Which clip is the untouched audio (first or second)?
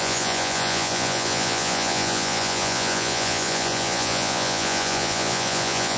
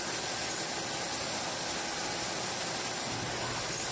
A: second